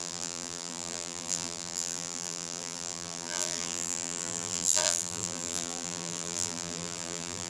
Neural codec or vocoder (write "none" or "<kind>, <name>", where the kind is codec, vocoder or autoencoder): vocoder, BigVGAN v2